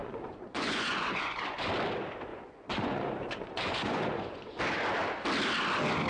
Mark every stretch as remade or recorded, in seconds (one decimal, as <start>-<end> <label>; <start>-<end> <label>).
0.0-1.7 remade; 1.7-2.3 recorded; 2.3-4.6 remade; 4.6-6.1 recorded